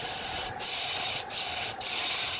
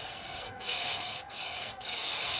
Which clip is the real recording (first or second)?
first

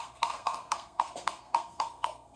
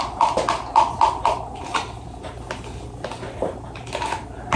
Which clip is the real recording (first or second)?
second